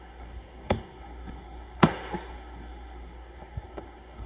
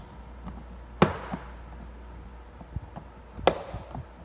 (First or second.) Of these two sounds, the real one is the second